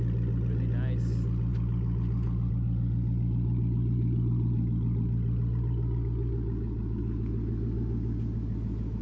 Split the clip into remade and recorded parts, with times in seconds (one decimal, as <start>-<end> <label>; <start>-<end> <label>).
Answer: 0.0-9.0 recorded